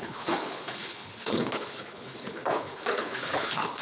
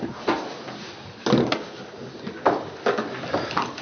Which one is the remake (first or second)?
first